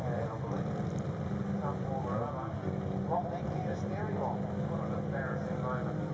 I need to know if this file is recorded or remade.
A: recorded